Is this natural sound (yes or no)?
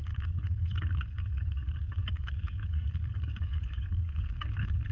no